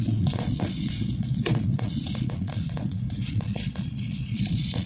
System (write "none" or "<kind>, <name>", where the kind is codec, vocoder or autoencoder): vocoder, Vocos